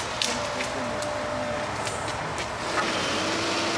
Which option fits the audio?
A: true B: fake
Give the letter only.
A